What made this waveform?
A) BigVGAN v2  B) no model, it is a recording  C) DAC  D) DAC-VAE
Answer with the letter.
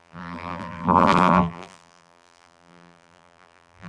A